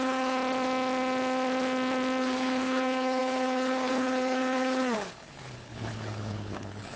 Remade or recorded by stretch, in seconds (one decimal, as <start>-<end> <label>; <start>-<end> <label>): 0.0-0.4 remade; 0.4-2.2 recorded; 2.2-7.0 remade